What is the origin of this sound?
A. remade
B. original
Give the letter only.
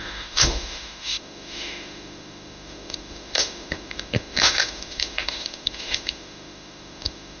A